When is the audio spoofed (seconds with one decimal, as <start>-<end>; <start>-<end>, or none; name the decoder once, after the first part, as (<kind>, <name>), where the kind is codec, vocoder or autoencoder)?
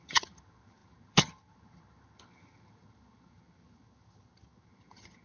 0.0-5.2 (vocoder, HiFi-GAN)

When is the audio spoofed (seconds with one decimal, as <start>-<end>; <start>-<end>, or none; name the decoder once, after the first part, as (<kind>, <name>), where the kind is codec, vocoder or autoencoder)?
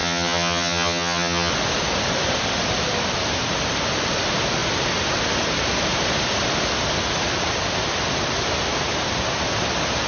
0.0-1.5 (vocoder, HiFi-GAN)